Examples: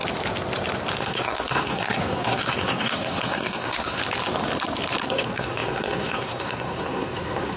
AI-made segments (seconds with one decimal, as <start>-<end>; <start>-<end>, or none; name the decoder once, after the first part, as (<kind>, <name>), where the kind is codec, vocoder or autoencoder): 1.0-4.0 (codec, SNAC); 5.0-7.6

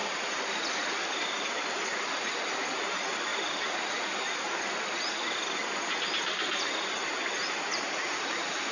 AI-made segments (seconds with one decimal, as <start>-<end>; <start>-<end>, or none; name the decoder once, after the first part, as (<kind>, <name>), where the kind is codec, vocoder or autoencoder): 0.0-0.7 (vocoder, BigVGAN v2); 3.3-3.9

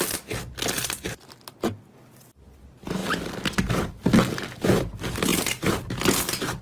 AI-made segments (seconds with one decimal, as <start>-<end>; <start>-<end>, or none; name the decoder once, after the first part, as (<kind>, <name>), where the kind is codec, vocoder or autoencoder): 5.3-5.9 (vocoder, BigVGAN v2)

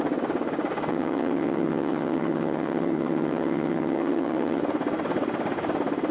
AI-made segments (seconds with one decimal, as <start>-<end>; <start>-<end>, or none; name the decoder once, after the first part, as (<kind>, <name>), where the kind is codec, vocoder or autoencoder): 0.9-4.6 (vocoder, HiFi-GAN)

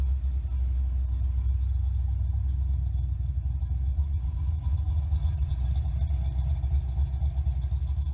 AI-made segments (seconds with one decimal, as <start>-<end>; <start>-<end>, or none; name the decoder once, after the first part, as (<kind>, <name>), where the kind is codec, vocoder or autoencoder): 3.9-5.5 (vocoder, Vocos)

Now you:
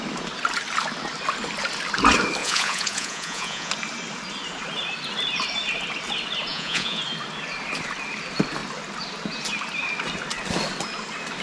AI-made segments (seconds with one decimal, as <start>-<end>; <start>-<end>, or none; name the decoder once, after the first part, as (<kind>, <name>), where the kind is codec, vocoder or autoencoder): 2.4-3.7 (vocoder, Vocos); 6.5-7.0

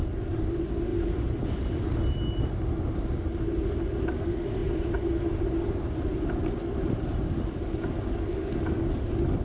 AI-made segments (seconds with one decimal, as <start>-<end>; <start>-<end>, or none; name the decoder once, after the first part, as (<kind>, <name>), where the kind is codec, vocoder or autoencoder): none

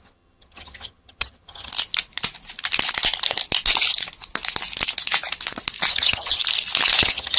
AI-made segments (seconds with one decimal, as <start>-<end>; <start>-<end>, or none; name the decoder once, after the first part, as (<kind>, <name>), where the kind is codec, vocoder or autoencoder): 0.0-1.7 (vocoder, HiFi-GAN); 5.9-6.4; 7.0-7.4